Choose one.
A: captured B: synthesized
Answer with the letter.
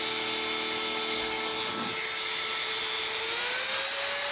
A